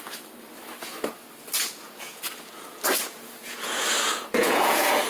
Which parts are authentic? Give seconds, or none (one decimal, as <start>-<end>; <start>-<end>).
0.0-1.6; 2.2-3.0